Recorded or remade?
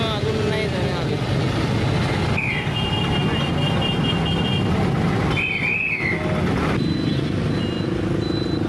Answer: recorded